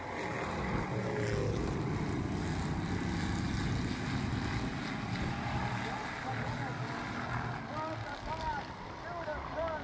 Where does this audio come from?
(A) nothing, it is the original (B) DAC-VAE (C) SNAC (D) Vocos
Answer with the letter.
A